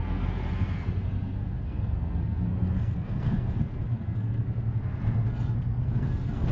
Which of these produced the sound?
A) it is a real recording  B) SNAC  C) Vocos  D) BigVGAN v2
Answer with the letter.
B